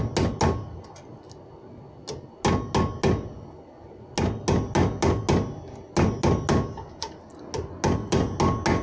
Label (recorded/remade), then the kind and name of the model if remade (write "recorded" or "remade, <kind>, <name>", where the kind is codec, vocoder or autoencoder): recorded